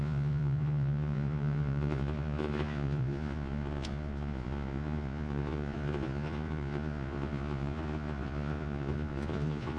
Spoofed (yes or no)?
yes